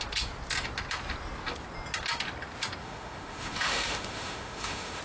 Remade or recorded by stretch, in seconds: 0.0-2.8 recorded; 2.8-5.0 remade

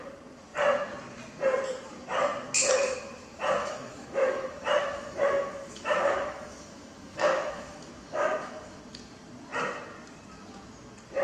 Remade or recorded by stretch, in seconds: 0.0-3.6 recorded; 3.6-8.8 remade; 8.8-11.2 recorded

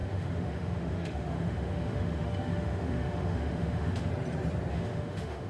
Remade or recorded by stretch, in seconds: 0.0-4.1 remade; 4.1-4.7 recorded; 4.7-5.5 remade

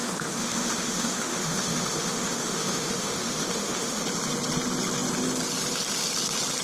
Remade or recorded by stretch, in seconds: 0.0-4.0 remade; 4.0-6.6 recorded

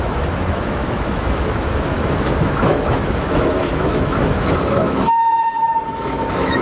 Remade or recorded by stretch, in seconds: 0.0-6.6 remade